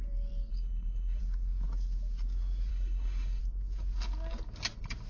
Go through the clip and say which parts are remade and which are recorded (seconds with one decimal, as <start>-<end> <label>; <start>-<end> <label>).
0.0-0.5 recorded; 0.5-1.2 remade; 1.2-2.7 recorded; 2.7-3.4 remade; 3.4-5.1 recorded